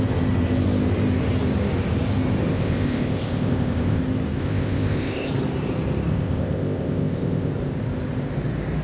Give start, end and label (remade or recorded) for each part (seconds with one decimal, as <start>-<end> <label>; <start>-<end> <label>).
0.0-2.5 recorded; 2.5-4.0 remade; 4.0-4.4 recorded; 4.4-5.3 remade; 5.3-6.1 recorded; 6.1-7.5 remade; 7.5-8.8 recorded